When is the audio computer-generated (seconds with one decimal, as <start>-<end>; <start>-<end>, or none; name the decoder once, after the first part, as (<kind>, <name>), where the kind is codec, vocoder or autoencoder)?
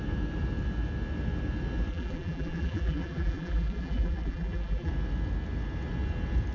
1.9-4.9 (vocoder, BigVGAN v2)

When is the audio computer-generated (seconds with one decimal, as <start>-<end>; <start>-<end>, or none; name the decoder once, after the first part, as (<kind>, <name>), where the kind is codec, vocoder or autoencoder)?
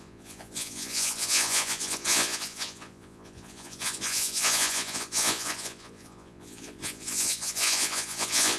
0.0-8.6 (vocoder, Vocos)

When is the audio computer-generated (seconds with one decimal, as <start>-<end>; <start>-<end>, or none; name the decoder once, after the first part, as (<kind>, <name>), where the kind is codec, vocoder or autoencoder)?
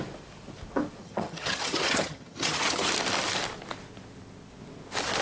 1.0-2.9 (vocoder, HiFi-GAN)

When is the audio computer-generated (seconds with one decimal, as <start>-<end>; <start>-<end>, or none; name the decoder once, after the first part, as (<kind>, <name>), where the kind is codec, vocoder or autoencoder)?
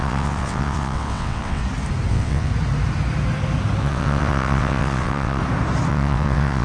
0.0-1.6 (vocoder, WaveNeXt); 2.1-2.5; 3.8-5.4; 5.9-6.6